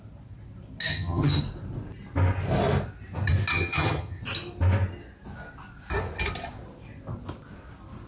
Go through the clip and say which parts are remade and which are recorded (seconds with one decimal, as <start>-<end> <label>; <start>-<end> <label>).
0.0-0.9 recorded; 0.9-1.4 remade; 1.4-3.5 recorded; 3.5-4.2 remade; 4.2-8.1 recorded